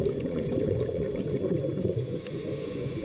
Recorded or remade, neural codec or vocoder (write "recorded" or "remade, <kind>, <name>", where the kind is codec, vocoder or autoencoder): remade, vocoder, Vocos